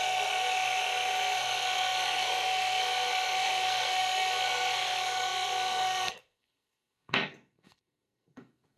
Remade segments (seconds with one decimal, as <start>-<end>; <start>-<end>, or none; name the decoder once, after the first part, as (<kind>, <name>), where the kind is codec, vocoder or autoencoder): 0.0-8.8 (codec, SNAC)